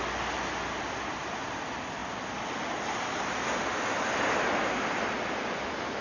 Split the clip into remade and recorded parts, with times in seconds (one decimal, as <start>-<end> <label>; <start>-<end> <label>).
0.0-6.0 recorded